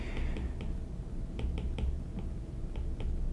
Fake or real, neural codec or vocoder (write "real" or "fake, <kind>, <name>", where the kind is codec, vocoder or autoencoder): real